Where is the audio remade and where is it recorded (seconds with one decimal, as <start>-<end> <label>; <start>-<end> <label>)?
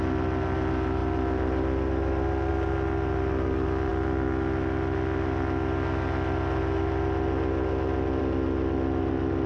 0.0-1.0 recorded; 1.0-2.5 remade; 2.5-9.5 recorded